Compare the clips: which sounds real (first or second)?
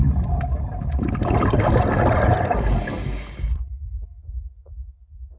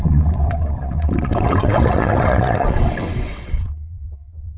first